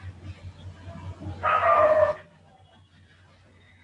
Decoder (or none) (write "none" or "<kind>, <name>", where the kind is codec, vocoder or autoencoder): none